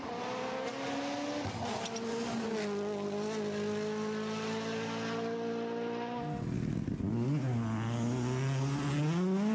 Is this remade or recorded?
recorded